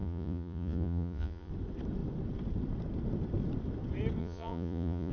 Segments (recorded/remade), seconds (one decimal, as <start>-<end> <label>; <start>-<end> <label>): 0.0-1.5 remade; 1.5-4.2 recorded; 4.2-5.1 remade